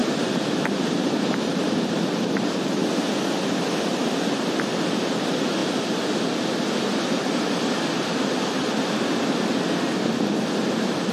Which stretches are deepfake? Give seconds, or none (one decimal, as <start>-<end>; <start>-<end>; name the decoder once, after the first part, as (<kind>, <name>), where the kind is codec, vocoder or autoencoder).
0.0-2.8 (vocoder, BigVGAN v2); 3.6-5.6; 10.7-11.1